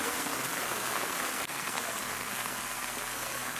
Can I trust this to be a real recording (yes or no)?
no